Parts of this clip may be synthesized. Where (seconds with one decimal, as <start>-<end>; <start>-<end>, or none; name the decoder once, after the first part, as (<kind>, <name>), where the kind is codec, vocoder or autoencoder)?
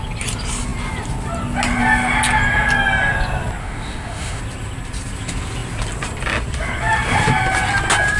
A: 3.6-4.4 (autoencoder, DAC-VAE)